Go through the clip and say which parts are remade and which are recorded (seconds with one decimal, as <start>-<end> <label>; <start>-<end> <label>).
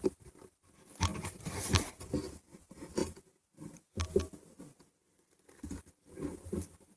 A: 0.0-7.0 recorded